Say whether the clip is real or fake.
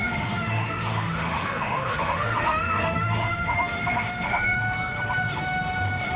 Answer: fake